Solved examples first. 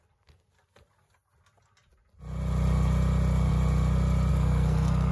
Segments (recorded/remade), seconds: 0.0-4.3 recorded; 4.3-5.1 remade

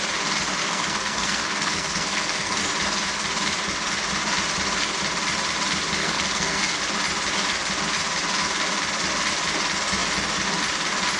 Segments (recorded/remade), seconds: 0.0-0.6 recorded; 0.6-2.6 remade; 2.6-6.0 recorded; 6.0-6.8 remade; 6.8-11.2 recorded

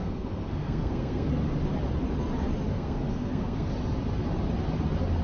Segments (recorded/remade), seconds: 0.0-1.3 remade; 1.3-2.7 recorded; 2.7-3.7 remade; 3.7-5.2 recorded

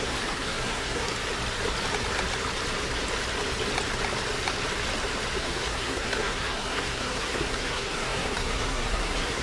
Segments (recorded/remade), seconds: 0.0-1.1 remade; 1.1-5.4 recorded; 5.4-9.4 remade

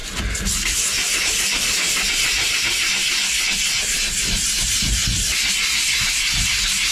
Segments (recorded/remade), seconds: 0.0-6.9 recorded